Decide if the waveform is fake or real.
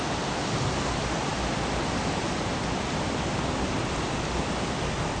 real